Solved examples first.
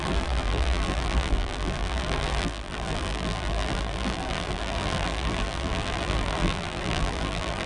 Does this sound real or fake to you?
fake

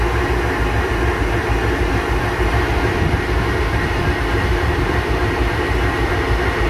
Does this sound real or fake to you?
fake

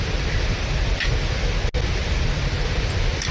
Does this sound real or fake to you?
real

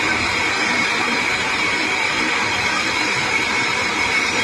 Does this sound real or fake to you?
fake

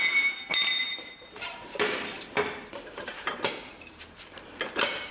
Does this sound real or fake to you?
fake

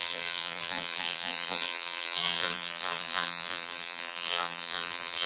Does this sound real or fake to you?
fake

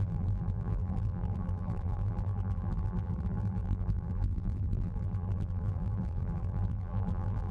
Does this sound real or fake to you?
fake